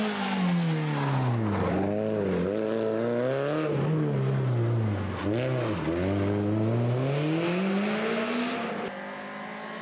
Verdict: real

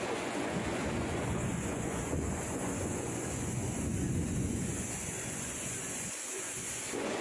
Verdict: fake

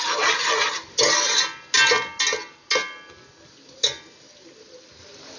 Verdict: real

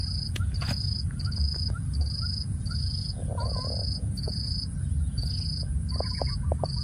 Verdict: fake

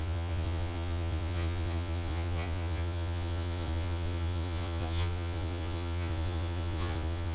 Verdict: fake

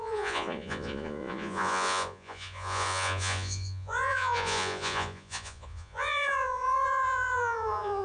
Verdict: fake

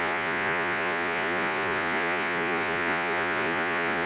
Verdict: fake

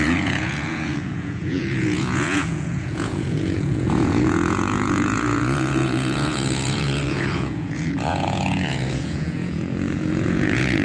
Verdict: fake